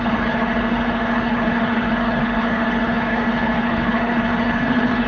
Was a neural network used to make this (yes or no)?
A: yes